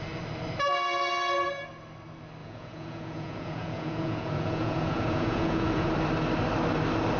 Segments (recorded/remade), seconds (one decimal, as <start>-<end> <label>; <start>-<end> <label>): 0.0-2.4 recorded; 2.4-5.9 remade; 5.9-7.2 recorded